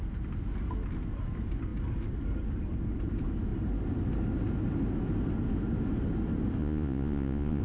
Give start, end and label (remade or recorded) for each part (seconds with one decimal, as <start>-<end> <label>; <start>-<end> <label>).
0.0-6.6 recorded; 6.6-7.6 remade